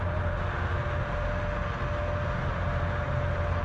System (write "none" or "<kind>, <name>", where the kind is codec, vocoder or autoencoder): none